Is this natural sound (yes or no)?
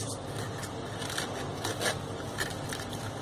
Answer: yes